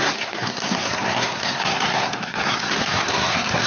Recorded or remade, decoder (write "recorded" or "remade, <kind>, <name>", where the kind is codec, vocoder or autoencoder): remade, codec, SNAC